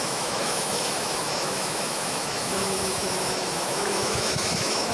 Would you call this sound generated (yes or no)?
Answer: yes